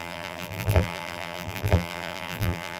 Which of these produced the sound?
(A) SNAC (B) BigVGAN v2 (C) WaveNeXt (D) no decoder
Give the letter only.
B